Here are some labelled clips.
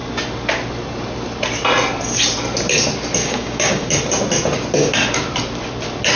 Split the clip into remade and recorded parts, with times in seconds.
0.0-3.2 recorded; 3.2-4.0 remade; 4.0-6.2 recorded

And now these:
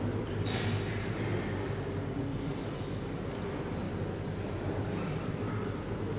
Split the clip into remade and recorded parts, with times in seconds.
0.0-6.2 recorded

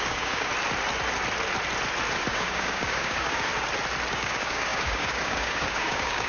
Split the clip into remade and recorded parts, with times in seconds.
0.0-0.5 remade; 0.5-2.3 recorded; 2.3-3.5 remade; 3.5-4.1 recorded; 4.1-6.3 remade

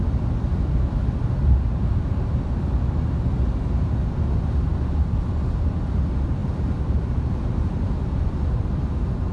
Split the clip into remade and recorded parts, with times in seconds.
0.0-1.7 recorded; 1.7-2.4 remade; 2.4-6.4 recorded; 6.4-8.3 remade; 8.3-9.3 recorded

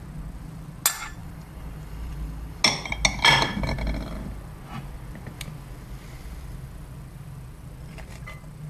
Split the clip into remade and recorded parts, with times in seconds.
0.0-1.2 recorded; 1.2-2.6 remade; 2.6-8.7 recorded

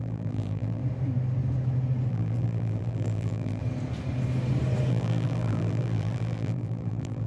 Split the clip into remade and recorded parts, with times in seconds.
0.0-0.8 remade; 0.8-2.1 recorded; 2.1-3.6 remade; 3.6-4.9 recorded; 4.9-7.3 remade